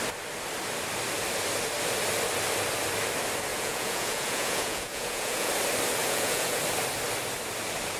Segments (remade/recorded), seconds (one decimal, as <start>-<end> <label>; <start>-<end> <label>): 0.0-3.5 recorded; 3.5-5.5 remade; 5.5-6.0 recorded; 6.0-6.6 remade; 6.6-8.0 recorded